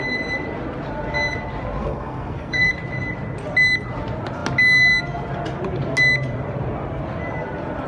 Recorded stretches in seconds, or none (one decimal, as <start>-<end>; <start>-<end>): 0.0-1.8; 2.7-7.9